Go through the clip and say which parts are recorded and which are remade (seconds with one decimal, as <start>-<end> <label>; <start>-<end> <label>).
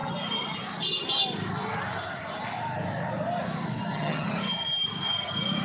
0.0-3.8 recorded; 3.8-4.3 remade; 4.3-5.6 recorded